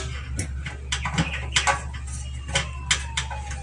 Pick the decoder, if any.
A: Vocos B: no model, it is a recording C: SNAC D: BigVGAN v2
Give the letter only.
B